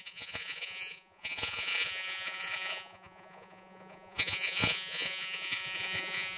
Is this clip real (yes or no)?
no